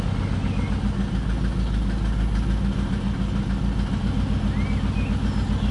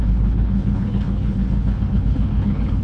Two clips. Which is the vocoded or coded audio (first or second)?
second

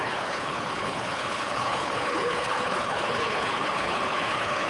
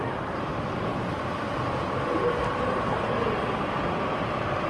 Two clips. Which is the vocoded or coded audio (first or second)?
first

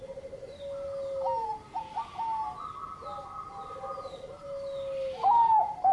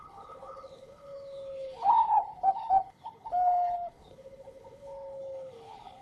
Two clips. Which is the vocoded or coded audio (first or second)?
second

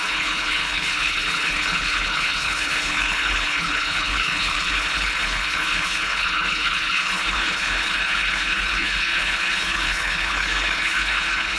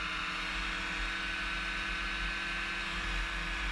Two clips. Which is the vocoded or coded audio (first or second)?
first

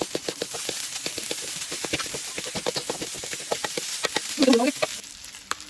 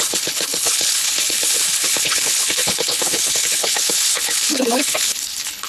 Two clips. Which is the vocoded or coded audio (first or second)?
second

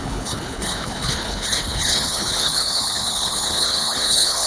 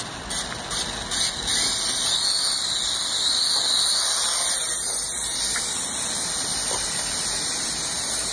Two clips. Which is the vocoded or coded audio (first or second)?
first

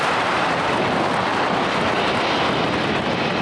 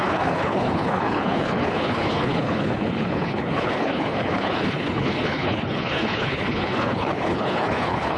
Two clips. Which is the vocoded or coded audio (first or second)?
second